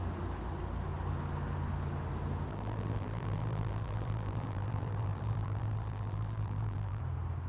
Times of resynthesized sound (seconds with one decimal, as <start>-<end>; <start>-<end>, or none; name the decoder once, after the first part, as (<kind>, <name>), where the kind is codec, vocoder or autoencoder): 2.5-7.0 (vocoder, BigVGAN v2)